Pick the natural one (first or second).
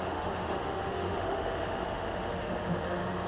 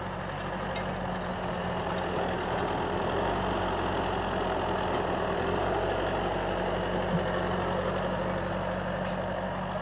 second